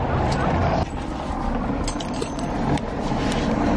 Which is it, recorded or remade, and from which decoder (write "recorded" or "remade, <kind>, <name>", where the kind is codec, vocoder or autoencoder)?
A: recorded